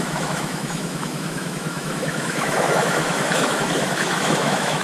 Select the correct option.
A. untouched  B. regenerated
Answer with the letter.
B